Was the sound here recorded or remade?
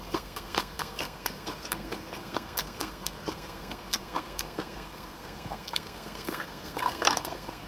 remade